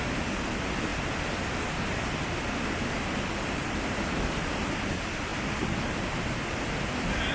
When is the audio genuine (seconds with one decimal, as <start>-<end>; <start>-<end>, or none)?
0.0-7.3